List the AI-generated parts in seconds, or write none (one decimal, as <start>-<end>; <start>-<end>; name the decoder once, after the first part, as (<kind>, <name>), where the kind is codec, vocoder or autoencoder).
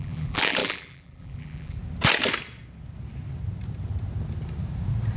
0.0-1.8 (vocoder, BigVGAN v2)